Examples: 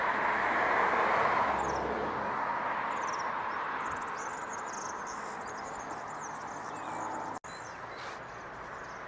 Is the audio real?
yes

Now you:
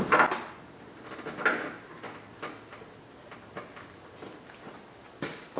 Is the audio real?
yes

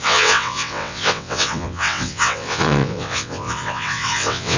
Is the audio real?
no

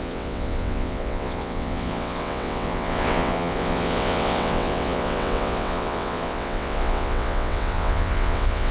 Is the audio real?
no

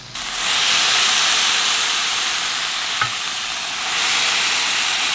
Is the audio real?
yes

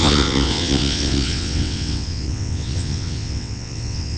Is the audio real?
no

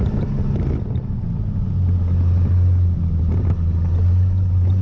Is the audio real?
yes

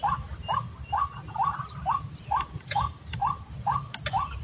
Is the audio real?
yes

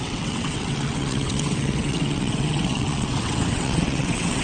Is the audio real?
no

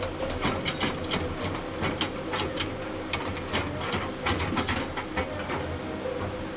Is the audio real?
yes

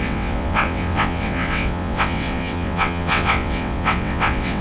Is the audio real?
no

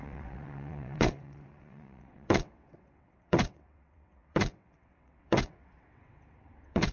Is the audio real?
no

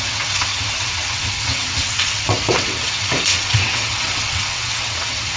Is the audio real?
no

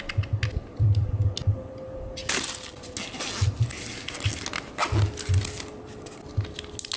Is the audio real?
yes